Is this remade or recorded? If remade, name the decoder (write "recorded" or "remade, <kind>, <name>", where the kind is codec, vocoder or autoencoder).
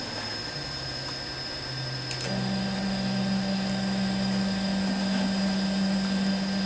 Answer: recorded